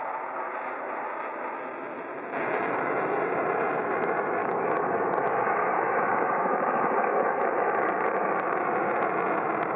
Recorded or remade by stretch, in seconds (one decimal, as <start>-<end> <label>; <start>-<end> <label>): 0.0-4.4 recorded; 4.4-8.6 remade; 8.6-9.8 recorded